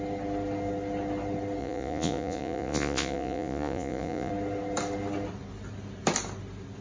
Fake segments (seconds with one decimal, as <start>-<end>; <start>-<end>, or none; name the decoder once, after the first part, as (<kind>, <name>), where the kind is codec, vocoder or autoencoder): 1.6-4.3 (vocoder, Vocos)